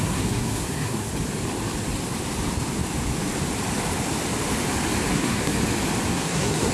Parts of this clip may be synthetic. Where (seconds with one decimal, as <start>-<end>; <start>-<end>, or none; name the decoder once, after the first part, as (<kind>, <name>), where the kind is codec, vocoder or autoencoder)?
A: 0.0-1.1 (codec, SNAC); 5.1-5.5; 6.1-6.7